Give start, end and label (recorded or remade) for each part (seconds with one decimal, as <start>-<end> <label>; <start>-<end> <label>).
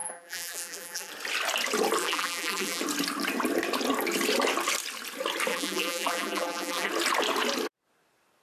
0.0-1.1 remade; 1.1-2.0 recorded; 2.0-2.8 remade; 2.8-5.5 recorded; 5.5-6.9 remade; 6.9-8.4 recorded